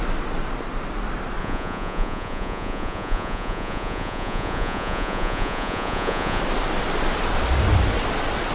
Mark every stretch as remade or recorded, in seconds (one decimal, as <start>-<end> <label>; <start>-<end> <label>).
0.0-1.4 recorded; 1.4-6.4 remade; 6.4-8.5 recorded